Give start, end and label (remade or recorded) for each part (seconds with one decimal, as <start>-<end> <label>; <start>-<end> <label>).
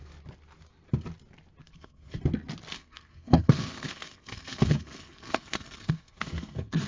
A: 0.0-1.6 recorded; 1.6-2.2 remade; 2.2-2.7 recorded; 2.7-6.9 remade